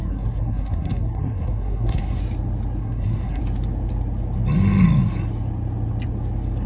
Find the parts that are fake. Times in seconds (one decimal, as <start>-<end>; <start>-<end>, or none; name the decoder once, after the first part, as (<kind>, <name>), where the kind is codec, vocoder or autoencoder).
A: 0.0-2.2 (codec, SNAC); 2.8-3.4